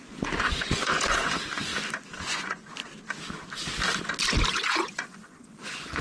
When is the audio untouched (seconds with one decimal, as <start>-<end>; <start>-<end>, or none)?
1.7-2.2; 2.6-4.5